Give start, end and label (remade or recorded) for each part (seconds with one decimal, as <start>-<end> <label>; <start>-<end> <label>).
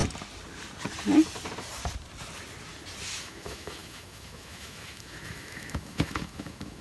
0.0-3.2 recorded; 3.2-6.8 remade